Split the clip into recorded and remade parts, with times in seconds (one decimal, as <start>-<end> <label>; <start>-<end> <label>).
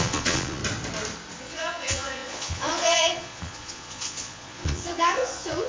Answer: 0.0-0.6 remade; 0.6-1.4 recorded; 1.4-5.7 remade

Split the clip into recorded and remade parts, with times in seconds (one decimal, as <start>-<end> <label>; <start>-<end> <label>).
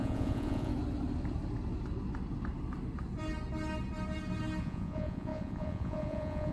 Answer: 0.0-0.7 remade; 0.7-4.6 recorded; 4.6-6.5 remade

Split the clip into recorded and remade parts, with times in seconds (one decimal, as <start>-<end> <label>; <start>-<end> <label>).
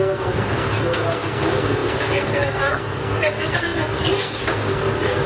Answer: 0.0-5.3 remade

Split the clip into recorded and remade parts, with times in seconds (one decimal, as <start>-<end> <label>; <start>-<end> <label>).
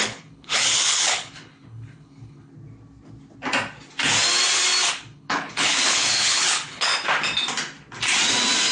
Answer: 0.0-2.5 remade; 2.5-4.9 recorded; 4.9-6.9 remade; 6.9-8.7 recorded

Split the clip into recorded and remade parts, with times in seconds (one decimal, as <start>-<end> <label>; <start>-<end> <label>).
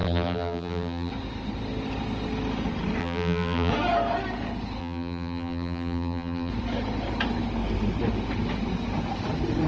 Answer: 0.0-1.1 remade; 1.1-3.0 recorded; 3.0-3.7 remade; 3.7-4.8 recorded; 4.8-6.5 remade; 6.5-9.7 recorded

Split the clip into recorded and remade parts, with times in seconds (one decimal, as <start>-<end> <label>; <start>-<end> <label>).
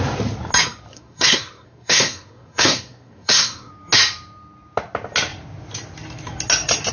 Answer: 0.0-0.9 recorded; 0.9-3.7 remade; 3.7-6.9 recorded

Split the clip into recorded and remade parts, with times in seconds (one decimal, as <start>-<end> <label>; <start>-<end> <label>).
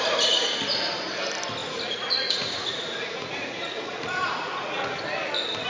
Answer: 0.0-1.6 recorded; 1.6-5.0 remade; 5.0-5.7 recorded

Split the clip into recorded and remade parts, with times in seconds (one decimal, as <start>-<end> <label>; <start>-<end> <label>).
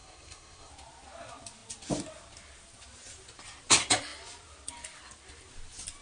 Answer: 0.0-0.7 remade; 0.7-6.0 recorded